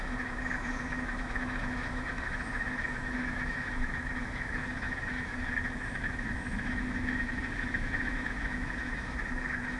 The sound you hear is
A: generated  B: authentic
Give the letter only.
A